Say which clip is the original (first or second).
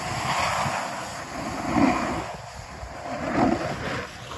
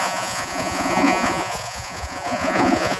first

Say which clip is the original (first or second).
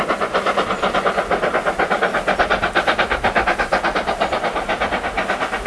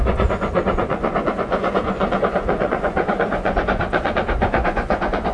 first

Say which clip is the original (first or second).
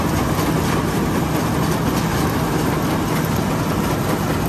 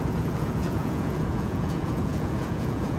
first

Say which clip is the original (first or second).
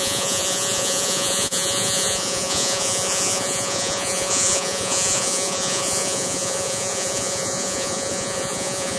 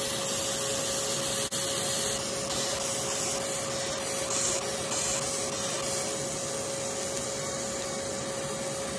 second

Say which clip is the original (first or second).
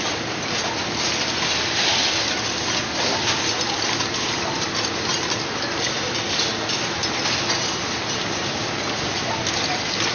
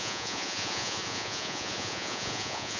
first